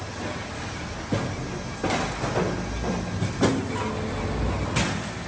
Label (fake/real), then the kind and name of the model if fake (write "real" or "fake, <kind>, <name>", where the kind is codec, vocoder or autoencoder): real